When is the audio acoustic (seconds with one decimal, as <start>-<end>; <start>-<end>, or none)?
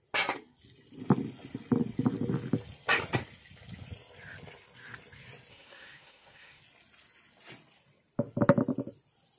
0.0-5.5; 6.6-9.4